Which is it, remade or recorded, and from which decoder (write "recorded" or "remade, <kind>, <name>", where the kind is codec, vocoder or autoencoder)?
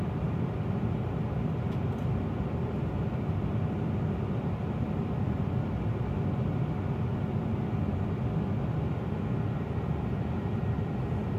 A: recorded